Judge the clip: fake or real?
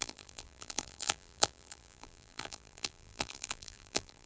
fake